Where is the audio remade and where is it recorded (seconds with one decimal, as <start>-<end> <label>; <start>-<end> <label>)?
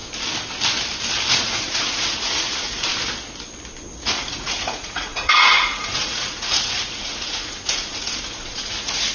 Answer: 0.0-1.3 recorded; 1.3-2.9 remade; 2.9-4.0 recorded; 4.0-9.1 remade